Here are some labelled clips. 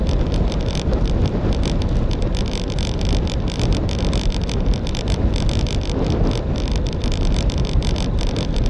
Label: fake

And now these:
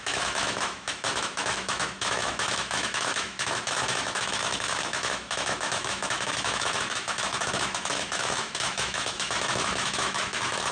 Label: fake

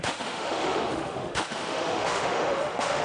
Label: fake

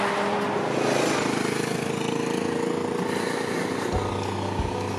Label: real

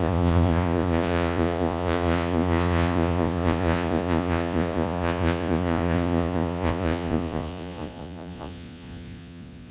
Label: fake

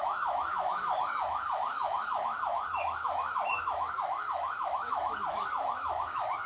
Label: fake